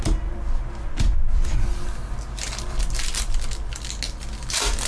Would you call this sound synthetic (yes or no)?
no